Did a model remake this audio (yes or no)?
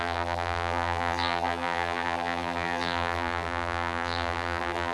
yes